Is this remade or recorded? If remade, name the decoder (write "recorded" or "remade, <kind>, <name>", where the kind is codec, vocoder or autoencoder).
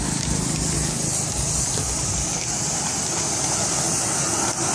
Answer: recorded